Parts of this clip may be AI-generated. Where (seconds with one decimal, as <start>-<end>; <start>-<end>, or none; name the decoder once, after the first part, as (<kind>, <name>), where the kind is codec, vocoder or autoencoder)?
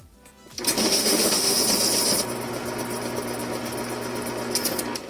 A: 0.8-1.6 (autoencoder, DAC-VAE)